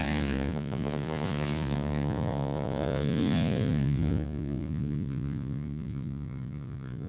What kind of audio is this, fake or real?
fake